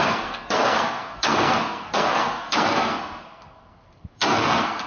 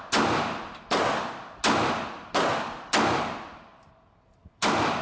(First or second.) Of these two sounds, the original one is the second